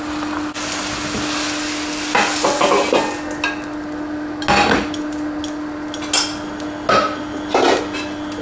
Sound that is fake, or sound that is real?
real